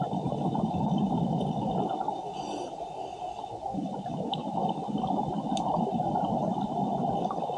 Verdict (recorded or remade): recorded